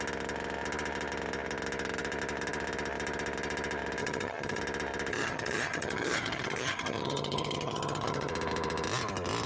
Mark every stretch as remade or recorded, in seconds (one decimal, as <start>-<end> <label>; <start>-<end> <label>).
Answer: 0.0-4.0 recorded; 4.0-4.6 remade; 4.6-5.1 recorded; 5.1-8.3 remade; 8.3-9.5 recorded